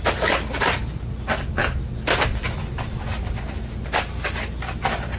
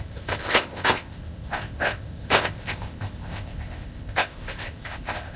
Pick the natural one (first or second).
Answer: first